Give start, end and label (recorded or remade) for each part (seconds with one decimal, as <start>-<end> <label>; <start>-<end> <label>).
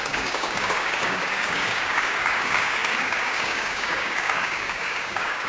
0.0-5.5 remade